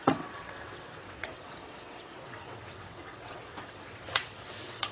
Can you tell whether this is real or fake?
fake